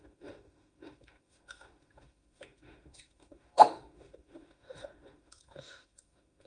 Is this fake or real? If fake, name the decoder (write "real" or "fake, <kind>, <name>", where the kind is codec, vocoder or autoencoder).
fake, autoencoder, DAC-VAE